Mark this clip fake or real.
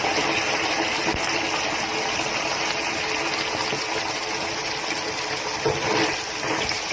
real